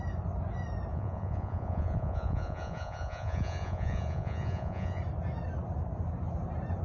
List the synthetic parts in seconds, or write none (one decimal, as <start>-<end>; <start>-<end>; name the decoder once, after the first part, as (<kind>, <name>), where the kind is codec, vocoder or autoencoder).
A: 0.9-5.0 (vocoder, Vocos)